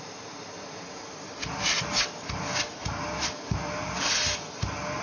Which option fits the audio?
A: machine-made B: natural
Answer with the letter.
B